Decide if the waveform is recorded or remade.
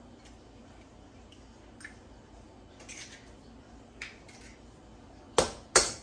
recorded